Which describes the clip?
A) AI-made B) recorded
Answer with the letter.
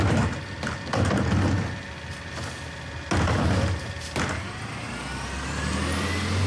B